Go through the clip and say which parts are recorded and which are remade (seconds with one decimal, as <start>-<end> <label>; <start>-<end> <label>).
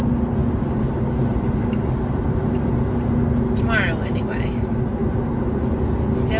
0.0-6.4 recorded